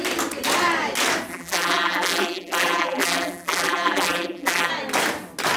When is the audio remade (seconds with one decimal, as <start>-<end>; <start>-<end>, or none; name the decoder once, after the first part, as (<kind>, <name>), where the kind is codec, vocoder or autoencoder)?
1.3-4.7 (vocoder, BigVGAN v2)